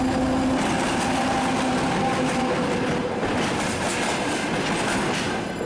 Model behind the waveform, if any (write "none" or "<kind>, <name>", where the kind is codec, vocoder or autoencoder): none